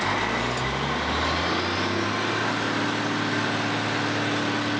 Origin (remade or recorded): recorded